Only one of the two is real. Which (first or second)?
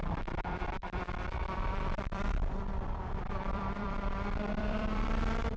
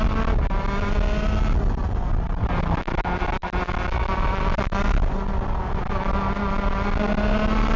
second